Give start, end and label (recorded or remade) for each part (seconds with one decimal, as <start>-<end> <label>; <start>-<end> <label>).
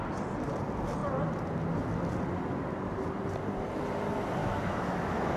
0.0-4.4 recorded; 4.4-5.4 remade